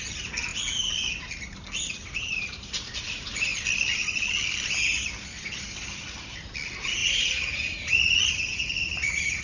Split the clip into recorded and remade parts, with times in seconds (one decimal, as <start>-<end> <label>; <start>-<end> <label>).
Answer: 0.0-7.0 recorded; 7.0-9.4 remade